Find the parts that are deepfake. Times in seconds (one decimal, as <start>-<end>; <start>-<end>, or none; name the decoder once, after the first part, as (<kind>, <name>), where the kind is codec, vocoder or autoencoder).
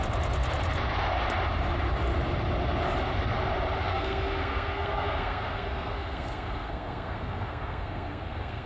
3.9-8.7 (codec, SNAC)